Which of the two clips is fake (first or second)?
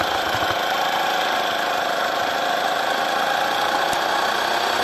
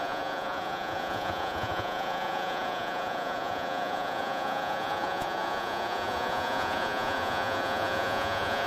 second